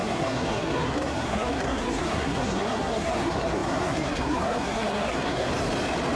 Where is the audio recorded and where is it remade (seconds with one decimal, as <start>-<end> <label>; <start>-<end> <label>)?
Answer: 0.0-5.5 remade; 5.5-6.2 recorded